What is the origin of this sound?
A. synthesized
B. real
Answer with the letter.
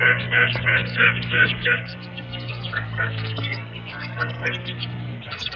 A